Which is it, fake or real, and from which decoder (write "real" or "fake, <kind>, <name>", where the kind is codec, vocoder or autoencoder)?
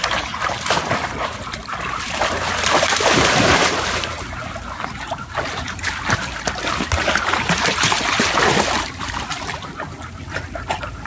real